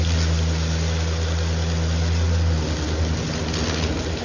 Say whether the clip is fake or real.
real